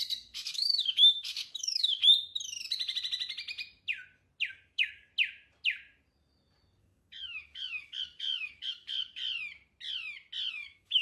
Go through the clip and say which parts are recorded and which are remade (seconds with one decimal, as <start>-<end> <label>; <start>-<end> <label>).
0.0-2.0 remade; 2.0-4.5 recorded; 4.5-5.1 remade; 5.1-6.8 recorded; 6.8-9.2 remade; 9.2-10.5 recorded; 10.5-11.0 remade